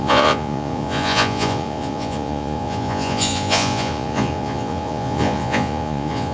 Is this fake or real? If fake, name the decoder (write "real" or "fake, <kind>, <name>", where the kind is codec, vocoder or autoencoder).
fake, vocoder, Vocos